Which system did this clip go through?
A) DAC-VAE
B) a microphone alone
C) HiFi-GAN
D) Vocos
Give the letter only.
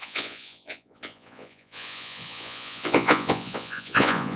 D